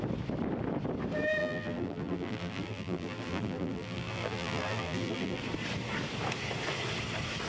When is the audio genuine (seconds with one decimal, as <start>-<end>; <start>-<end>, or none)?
0.0-1.4; 5.4-7.5